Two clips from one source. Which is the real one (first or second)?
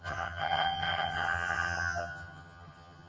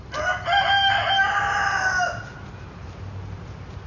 second